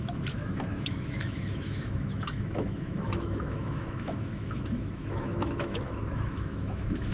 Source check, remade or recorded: remade